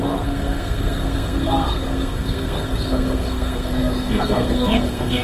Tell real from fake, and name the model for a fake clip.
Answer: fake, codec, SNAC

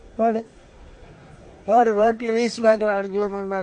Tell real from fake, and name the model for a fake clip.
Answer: fake, codec, SNAC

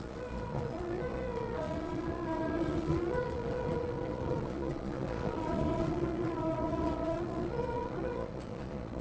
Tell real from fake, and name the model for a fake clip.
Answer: fake, vocoder, Vocos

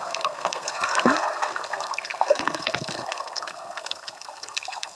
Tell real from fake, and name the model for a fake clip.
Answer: fake, codec, SNAC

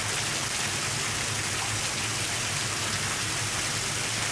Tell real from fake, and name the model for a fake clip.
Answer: real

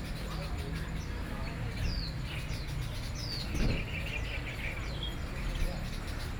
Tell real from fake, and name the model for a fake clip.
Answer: real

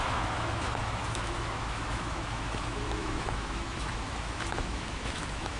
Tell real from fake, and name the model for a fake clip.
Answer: fake, autoencoder, DAC-VAE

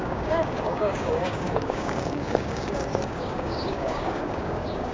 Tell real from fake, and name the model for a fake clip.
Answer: fake, codec, DAC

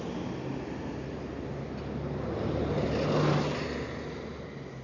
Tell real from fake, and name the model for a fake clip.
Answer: real